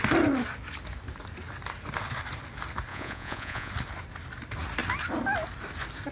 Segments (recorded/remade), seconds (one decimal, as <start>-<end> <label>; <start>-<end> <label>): 0.0-2.9 recorded; 2.9-3.7 remade; 3.7-6.1 recorded